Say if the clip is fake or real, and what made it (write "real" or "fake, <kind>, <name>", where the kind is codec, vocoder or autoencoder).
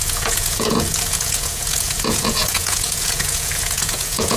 fake, vocoder, Vocos